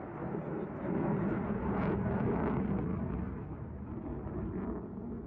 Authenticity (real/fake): real